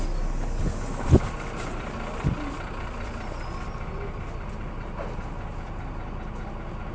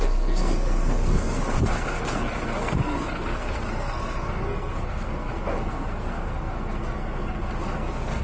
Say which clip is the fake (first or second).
second